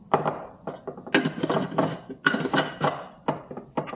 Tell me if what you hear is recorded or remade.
recorded